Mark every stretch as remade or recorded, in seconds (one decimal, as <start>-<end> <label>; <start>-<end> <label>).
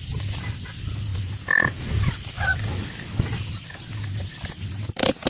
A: 0.0-5.3 recorded